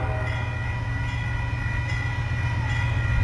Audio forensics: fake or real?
real